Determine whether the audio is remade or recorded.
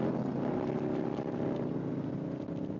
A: recorded